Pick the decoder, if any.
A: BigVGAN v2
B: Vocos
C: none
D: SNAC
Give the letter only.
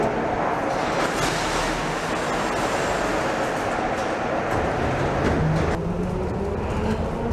C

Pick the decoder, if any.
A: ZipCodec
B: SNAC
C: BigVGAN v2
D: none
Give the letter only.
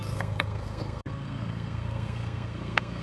B